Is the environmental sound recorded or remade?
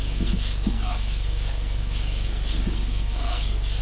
remade